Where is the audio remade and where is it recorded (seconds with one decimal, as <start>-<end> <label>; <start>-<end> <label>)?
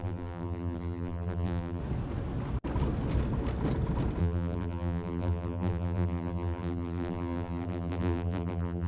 0.0-1.8 remade; 1.8-4.2 recorded; 4.2-8.9 remade